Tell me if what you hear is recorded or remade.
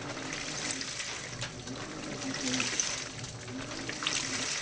recorded